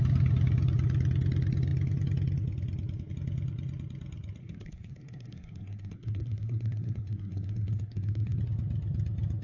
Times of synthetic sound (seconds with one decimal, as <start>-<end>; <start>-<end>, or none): 4.4-8.4